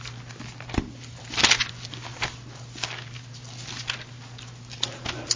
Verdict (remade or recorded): recorded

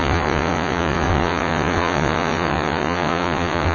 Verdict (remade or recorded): remade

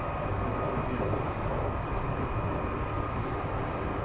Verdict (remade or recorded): recorded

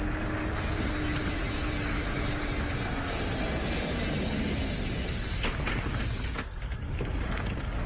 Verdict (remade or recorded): recorded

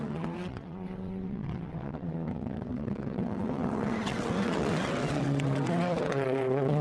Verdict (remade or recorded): remade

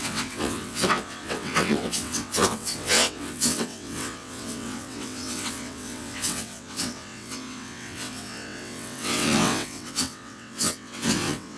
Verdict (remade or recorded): remade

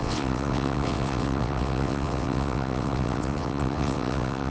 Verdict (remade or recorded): remade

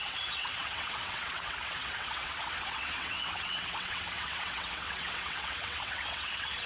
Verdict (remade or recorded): remade